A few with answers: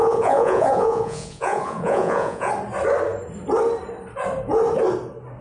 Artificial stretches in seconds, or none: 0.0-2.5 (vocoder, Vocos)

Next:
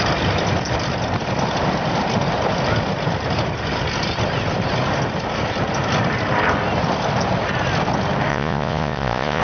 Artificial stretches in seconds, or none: 8.3-9.4 (vocoder, Vocos)

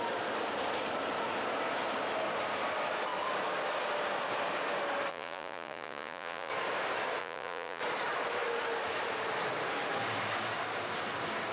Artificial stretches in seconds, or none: 5.1-6.5 (vocoder, Vocos); 7.2-7.8